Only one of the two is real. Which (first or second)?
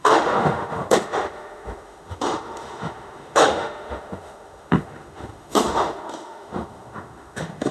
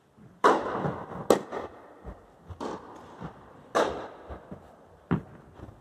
second